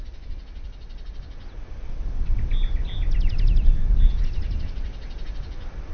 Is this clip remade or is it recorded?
recorded